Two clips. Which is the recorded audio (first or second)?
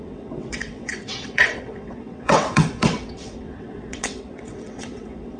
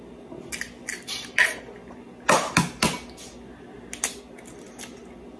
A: second